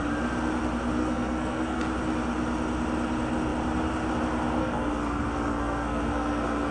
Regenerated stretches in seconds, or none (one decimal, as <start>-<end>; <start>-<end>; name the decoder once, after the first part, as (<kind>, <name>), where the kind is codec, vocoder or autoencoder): 1.0-1.8 (codec, SNAC); 4.6-6.7